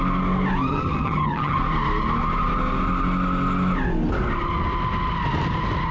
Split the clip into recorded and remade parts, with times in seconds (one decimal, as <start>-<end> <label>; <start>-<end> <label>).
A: 0.0-0.7 recorded; 0.7-1.6 remade; 1.6-5.9 recorded